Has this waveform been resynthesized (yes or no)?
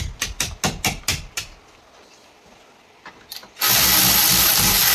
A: no